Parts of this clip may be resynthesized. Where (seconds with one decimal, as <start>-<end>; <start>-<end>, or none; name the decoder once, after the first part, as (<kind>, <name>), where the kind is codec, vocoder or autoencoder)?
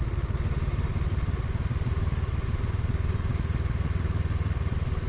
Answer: none